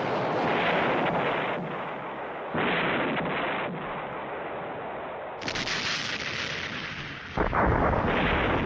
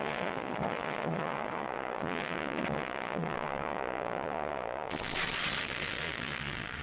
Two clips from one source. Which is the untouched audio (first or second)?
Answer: first